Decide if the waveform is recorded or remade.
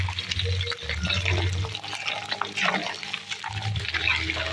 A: recorded